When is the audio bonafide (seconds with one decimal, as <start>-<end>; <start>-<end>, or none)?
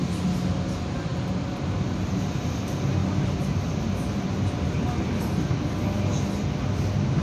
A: 0.0-7.2